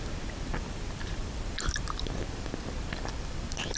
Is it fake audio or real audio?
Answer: fake